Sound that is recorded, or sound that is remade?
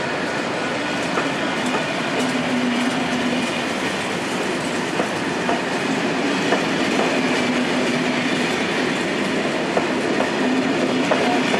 recorded